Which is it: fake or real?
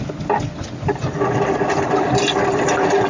real